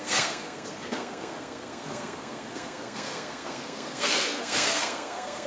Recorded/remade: remade